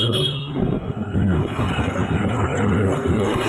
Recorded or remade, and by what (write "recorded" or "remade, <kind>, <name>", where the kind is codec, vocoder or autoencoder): remade, codec, SNAC